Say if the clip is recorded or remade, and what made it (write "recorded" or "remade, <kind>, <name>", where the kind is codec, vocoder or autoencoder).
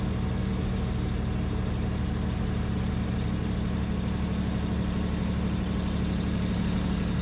recorded